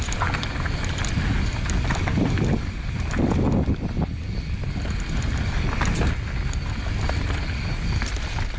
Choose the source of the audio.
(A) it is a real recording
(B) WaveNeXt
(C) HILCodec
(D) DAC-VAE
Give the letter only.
A